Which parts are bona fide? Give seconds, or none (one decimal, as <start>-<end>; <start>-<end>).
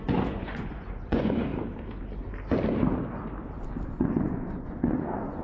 1.5-3.9